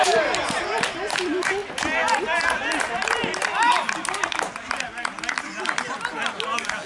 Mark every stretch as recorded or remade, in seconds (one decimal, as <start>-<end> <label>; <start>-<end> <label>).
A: 0.0-6.9 recorded